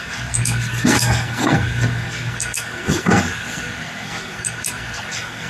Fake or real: fake